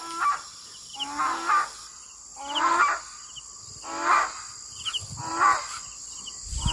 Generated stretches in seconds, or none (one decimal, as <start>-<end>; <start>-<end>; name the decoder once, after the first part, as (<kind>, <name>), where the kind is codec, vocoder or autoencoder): none